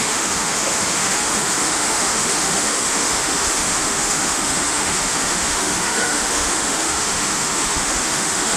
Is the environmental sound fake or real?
fake